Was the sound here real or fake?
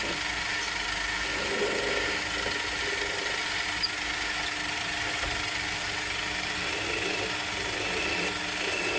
real